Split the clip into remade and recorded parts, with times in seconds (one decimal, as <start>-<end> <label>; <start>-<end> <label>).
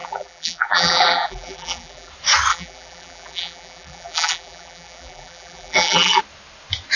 0.0-2.1 remade; 2.1-2.5 recorded; 2.5-6.2 remade; 6.2-7.0 recorded